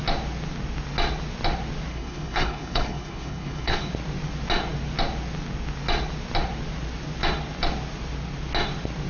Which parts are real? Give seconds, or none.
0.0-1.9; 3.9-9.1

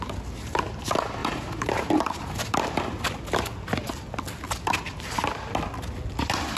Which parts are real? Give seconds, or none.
0.0-1.2; 2.6-6.6

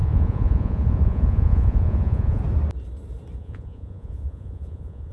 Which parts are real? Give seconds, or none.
2.4-3.4

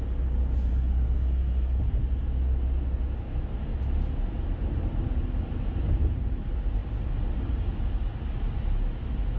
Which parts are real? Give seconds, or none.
0.0-0.7; 1.8-9.4

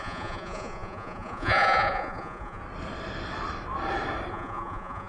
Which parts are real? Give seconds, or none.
2.6-4.3

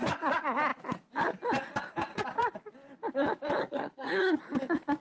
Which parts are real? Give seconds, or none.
0.0-3.6; 4.4-5.0

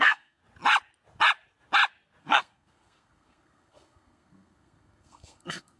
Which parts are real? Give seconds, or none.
0.4-2.2